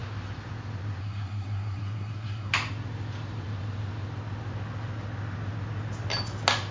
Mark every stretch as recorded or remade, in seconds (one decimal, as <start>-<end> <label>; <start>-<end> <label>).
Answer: 0.0-1.0 recorded; 1.0-2.5 remade; 2.5-6.7 recorded